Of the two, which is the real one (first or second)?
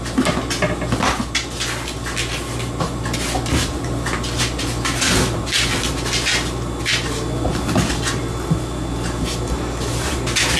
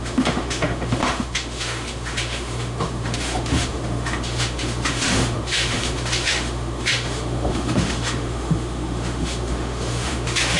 first